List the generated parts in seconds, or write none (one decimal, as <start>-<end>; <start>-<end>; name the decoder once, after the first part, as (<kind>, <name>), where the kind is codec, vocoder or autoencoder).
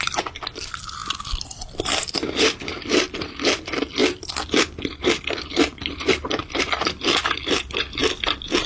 0.0-1.0 (vocoder, BigVGAN v2); 2.4-8.0